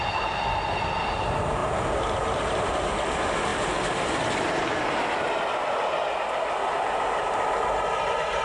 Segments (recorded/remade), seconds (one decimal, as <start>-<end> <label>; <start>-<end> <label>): 0.0-8.4 recorded